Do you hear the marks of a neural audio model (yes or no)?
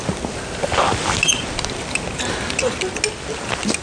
no